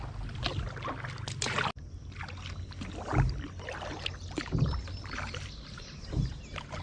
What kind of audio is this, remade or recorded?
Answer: recorded